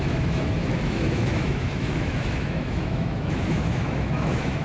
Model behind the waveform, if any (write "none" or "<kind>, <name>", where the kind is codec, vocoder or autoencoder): autoencoder, DAC-VAE